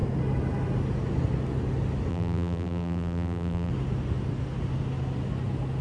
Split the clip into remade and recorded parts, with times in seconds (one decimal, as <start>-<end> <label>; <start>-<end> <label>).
0.0-2.1 recorded; 2.1-3.7 remade; 3.7-5.8 recorded